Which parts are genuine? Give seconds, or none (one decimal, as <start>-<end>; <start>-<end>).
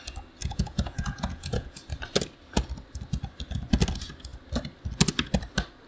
0.0-0.4; 1.8-5.9